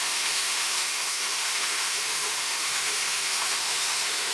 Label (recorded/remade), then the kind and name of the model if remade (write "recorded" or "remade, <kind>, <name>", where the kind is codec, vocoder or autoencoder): remade, autoencoder, DAC-VAE